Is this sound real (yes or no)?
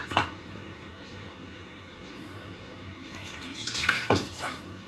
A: no